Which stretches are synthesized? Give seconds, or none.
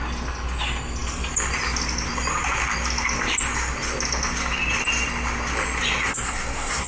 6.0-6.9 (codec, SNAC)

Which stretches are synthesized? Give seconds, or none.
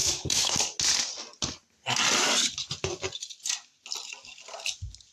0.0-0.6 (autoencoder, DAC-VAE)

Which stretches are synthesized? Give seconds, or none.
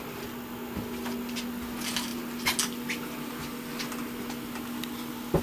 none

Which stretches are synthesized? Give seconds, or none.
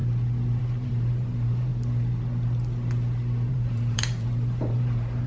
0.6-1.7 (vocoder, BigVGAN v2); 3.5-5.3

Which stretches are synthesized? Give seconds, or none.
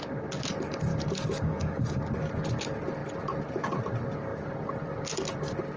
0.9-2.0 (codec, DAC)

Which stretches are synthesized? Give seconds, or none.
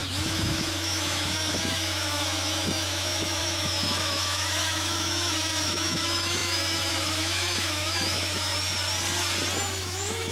0.0-8.5 (autoencoder, DAC-VAE); 9.8-10.3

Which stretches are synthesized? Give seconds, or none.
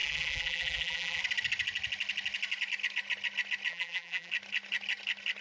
0.0-1.2 (vocoder, BigVGAN v2); 3.7-4.3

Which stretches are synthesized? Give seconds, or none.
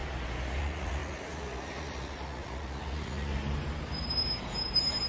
0.6-3.3 (vocoder, Vocos)